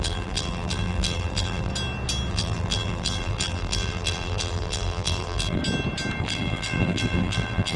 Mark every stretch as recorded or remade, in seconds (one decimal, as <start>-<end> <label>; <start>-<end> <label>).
0.0-1.7 remade; 1.7-2.3 recorded; 2.3-5.6 remade; 5.6-6.2 recorded; 6.2-7.8 remade